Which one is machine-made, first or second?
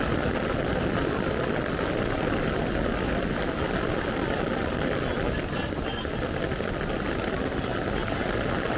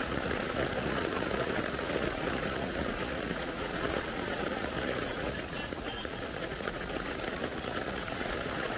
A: second